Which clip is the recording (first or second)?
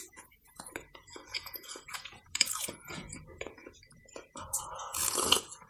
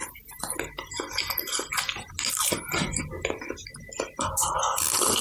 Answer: second